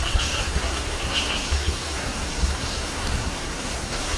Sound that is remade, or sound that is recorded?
remade